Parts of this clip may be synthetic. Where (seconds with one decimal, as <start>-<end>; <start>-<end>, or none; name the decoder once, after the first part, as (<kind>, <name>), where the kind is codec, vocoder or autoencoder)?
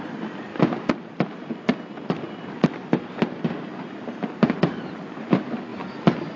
0.0-0.5 (vocoder, BigVGAN v2); 4.3-5.7